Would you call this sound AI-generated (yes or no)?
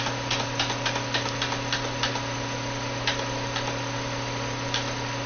no